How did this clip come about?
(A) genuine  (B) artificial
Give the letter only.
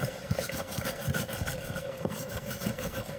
B